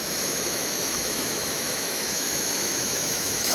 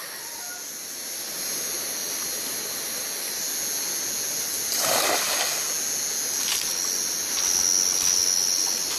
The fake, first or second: first